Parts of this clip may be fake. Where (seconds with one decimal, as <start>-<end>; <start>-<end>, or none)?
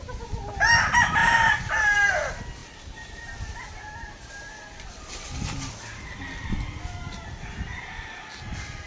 1.2-2.1; 2.6-4.4; 7.6-8.2